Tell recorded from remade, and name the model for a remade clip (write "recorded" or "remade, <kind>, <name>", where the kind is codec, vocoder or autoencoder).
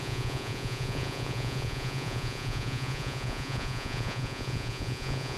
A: remade, vocoder, Vocos